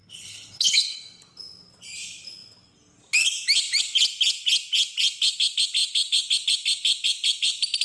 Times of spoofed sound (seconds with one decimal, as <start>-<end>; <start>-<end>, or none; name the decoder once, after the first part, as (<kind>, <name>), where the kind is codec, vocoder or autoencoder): 0.0-1.0 (codec, HILCodec)